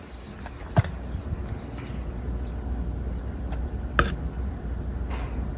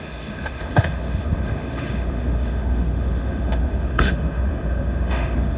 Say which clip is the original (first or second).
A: first